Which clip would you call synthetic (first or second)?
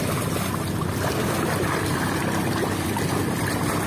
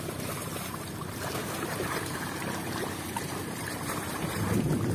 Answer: second